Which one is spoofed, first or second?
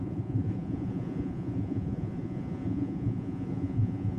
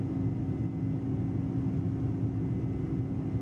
first